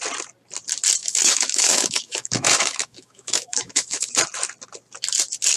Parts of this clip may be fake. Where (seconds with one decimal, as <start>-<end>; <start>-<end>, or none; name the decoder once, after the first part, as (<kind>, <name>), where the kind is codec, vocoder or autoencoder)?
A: 1.0-4.2 (autoencoder, DAC-VAE)